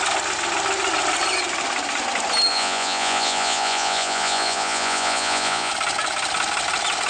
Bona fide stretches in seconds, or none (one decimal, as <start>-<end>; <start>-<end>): 0.0-2.5; 5.7-7.1